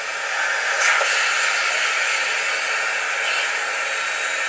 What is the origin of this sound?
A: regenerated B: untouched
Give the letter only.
B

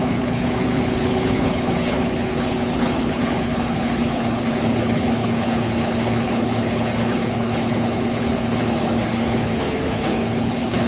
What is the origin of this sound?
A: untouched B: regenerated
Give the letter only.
B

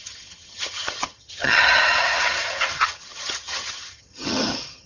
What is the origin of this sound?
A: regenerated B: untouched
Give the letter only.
A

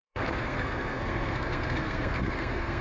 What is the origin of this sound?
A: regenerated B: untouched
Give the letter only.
A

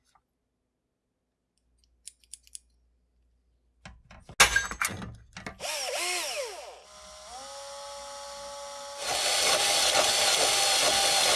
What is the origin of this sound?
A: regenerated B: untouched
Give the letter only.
B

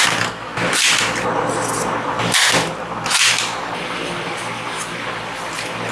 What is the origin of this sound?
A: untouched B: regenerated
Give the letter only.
A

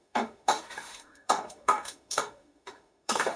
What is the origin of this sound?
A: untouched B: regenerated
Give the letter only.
B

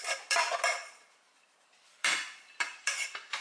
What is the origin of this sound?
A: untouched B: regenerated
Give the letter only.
B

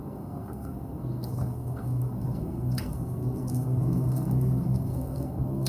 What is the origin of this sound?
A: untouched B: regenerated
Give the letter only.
B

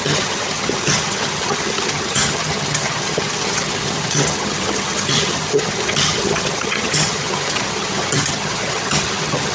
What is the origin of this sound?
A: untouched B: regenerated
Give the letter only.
B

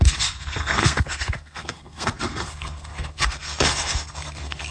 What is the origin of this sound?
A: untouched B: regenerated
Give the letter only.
B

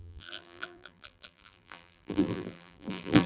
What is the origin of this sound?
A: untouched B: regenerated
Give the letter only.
B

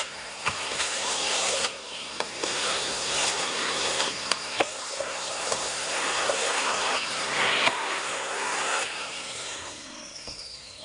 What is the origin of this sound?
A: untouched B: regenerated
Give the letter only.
B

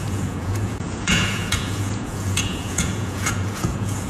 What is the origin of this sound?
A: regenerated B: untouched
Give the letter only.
A